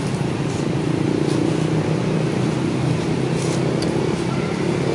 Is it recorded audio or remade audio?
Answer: recorded